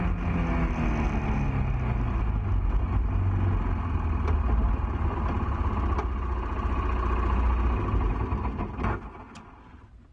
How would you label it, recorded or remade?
recorded